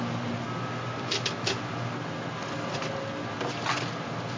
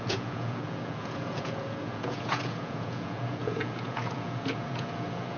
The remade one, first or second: second